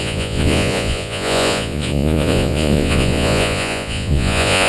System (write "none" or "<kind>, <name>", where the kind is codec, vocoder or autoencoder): vocoder, Vocos